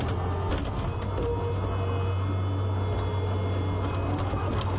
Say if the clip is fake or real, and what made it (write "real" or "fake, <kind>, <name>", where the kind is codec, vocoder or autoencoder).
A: real